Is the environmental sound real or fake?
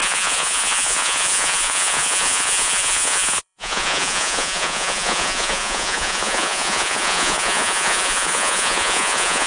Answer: fake